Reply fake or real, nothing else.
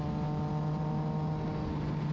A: real